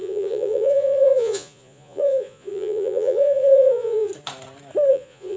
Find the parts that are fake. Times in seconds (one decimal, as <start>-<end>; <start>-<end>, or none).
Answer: 0.0-4.1; 4.9-5.4